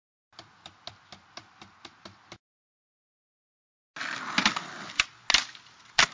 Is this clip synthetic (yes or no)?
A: no